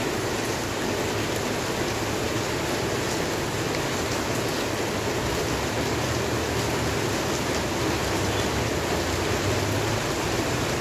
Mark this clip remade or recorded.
recorded